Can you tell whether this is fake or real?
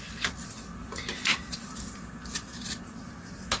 real